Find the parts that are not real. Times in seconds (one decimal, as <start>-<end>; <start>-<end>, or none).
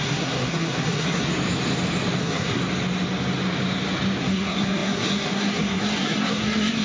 0.0-1.3; 2.2-2.6; 4.2-6.8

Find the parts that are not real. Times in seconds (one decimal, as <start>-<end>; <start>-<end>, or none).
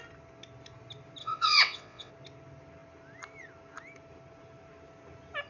1.2-2.1